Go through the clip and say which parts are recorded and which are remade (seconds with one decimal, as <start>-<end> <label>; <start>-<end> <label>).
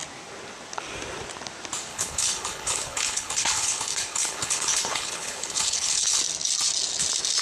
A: 0.0-1.9 recorded; 1.9-6.2 remade; 6.2-7.4 recorded